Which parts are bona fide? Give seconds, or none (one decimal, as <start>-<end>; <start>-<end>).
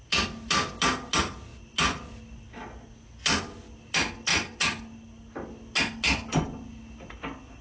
0.0-7.6